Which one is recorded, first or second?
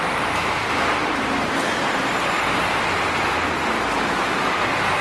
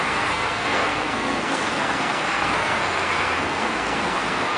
first